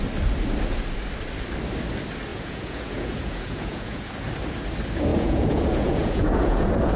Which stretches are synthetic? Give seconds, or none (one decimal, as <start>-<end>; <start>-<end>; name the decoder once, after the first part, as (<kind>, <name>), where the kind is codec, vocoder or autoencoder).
2.3-4.1 (vocoder, Vocos); 5.1-7.0